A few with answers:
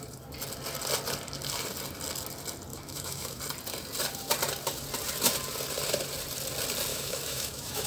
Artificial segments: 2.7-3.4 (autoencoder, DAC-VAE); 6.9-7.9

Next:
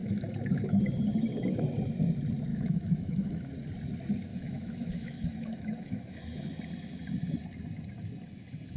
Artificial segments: 0.0-0.8 (autoencoder, DAC-VAE); 2.5-3.5; 4.3-6.6

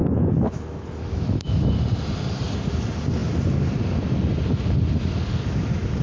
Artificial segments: 0.0-1.7 (autoencoder, DAC-VAE)

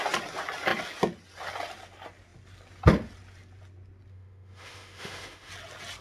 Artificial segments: 4.1-5.5 (autoencoder, DAC-VAE)

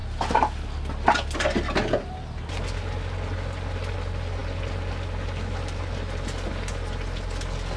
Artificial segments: none

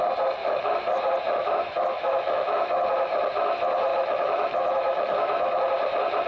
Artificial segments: 0.4-0.9 (autoencoder, DAC-VAE); 1.4-2.8; 3.9-5.7

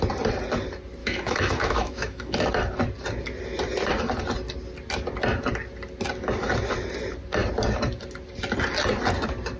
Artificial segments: 1.0-2.5 (autoencoder, DAC-VAE)

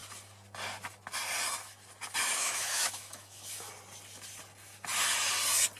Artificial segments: 2.2-3.7 (autoencoder, DAC-VAE)